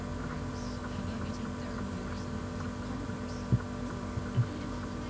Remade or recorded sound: recorded